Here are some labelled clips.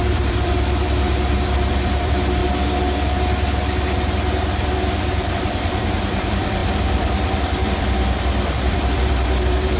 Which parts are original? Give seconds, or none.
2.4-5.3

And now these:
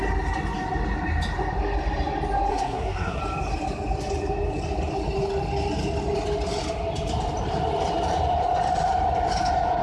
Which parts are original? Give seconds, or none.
0.0-2.5; 3.2-9.8

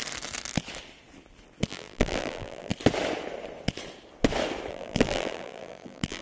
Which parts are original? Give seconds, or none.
0.0-1.7; 2.7-4.7

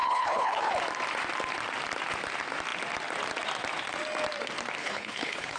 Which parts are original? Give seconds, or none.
0.7-4.8

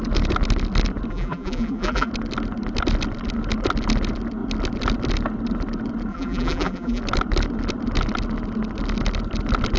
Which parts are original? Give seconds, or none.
0.0-1.1; 2.1-6.1; 7.0-9.8

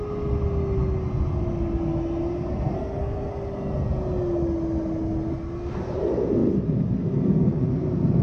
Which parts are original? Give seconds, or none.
0.0-2.7; 3.3-8.2